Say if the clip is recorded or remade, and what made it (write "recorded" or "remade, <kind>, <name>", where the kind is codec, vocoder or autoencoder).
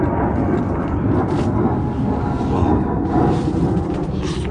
remade, vocoder, BigVGAN v2